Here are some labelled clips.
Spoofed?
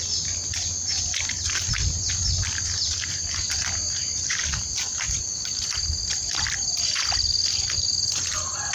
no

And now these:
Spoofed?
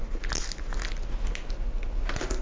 no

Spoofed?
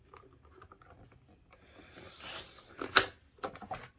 no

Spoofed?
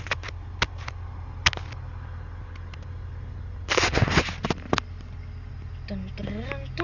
no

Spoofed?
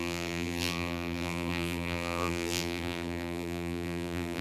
yes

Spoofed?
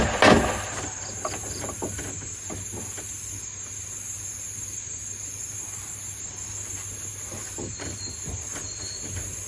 no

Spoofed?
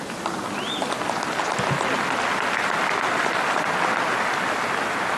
no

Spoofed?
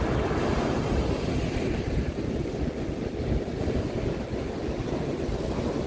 no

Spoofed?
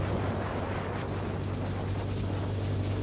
no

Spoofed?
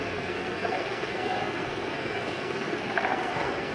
yes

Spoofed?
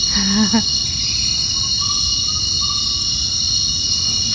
no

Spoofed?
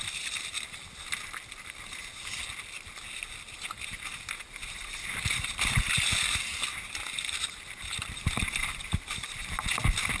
no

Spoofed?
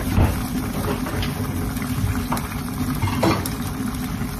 no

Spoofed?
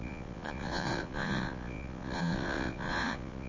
yes